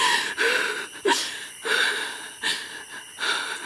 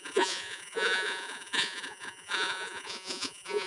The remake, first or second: second